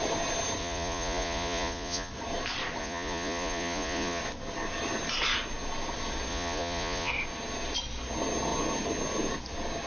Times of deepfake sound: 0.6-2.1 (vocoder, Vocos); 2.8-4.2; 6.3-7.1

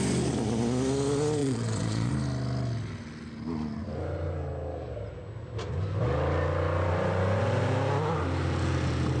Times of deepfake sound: 1.4-2.1 (vocoder, Vocos)

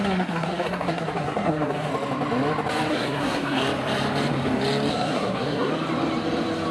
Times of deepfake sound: 0.0-1.9 (codec, SNAC); 2.9-3.6; 4.9-5.7

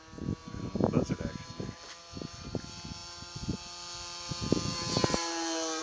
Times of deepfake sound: 0.4-2.0 (vocoder, BigVGAN v2)